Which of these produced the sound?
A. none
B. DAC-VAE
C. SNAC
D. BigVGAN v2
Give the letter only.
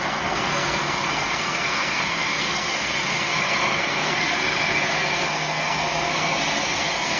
C